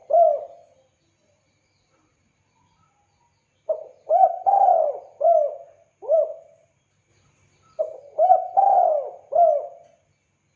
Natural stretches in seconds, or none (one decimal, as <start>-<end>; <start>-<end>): 0.0-10.6